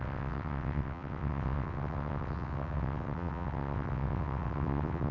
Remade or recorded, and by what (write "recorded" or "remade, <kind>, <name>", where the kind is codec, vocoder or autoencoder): remade, vocoder, WaveNeXt